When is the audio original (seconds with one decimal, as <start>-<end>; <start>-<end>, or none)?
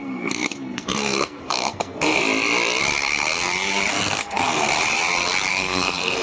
2.2-3.9; 4.7-5.5